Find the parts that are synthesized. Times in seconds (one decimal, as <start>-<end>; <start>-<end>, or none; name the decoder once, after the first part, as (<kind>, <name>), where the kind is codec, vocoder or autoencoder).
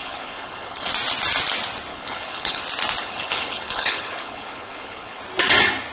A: 0.0-0.9 (codec, HILCodec); 1.9-2.6; 3.0-5.2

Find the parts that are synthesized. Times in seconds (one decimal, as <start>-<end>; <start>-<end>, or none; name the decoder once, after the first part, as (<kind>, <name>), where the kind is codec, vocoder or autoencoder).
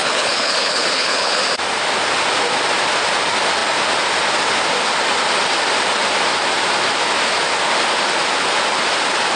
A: 0.0-1.4 (codec, HILCodec)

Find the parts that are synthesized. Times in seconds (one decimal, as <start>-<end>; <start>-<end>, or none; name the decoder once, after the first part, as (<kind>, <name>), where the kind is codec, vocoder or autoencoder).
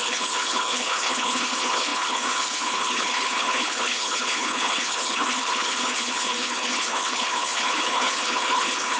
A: 0.0-9.0 (codec, HILCodec)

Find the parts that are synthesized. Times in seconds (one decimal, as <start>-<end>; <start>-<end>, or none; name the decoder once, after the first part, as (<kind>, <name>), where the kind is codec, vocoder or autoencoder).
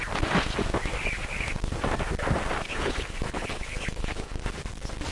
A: 2.7-4.4 (codec, HILCodec)